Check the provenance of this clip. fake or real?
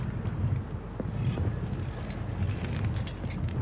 real